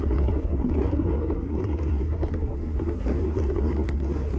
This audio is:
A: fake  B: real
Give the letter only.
A